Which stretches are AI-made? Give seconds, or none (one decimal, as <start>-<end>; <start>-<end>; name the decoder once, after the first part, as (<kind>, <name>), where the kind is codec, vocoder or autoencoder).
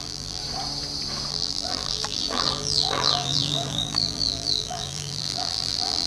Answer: 0.0-0.4 (vocoder, BigVGAN v2); 1.3-6.1